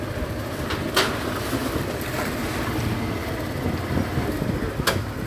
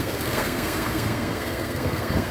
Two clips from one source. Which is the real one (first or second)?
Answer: first